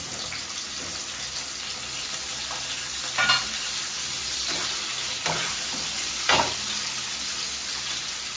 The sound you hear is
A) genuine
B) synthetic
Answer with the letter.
A